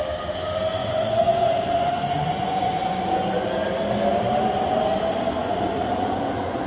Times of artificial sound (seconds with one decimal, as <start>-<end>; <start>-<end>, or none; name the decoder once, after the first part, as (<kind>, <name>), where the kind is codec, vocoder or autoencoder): 0.8-3.5 (vocoder, Vocos); 5.4-6.7